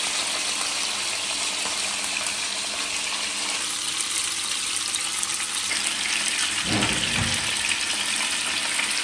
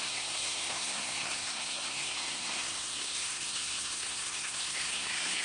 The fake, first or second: second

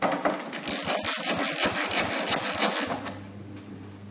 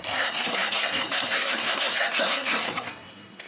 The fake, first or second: second